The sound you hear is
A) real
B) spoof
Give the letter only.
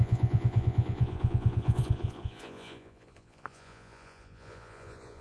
B